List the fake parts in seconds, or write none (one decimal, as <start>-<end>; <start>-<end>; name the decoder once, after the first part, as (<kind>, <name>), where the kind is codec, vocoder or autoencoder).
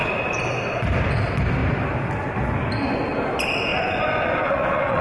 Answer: 3.7-5.0 (vocoder, Vocos)